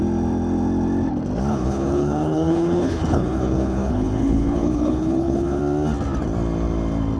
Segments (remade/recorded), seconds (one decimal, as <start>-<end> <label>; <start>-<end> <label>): 0.0-1.5 recorded; 1.5-5.6 remade; 5.6-7.2 recorded